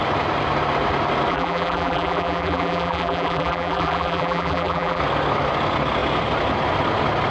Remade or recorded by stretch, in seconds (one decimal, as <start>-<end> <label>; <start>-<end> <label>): 0.0-1.3 recorded; 1.3-5.0 remade; 5.0-7.3 recorded